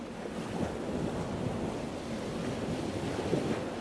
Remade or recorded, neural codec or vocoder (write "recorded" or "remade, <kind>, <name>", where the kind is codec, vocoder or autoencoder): recorded